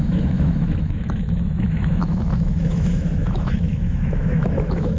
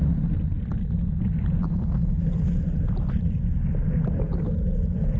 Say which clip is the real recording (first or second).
second